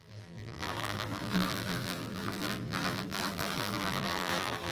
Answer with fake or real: fake